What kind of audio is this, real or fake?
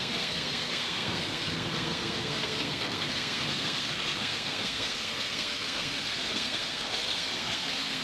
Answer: fake